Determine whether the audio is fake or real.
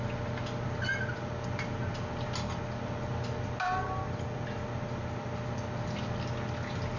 real